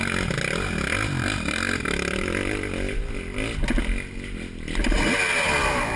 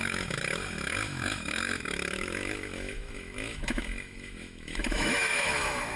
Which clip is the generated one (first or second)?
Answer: second